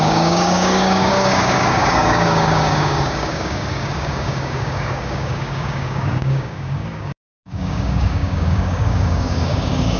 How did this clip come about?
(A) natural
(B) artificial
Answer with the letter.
B